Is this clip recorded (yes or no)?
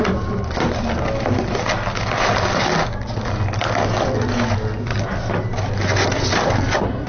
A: yes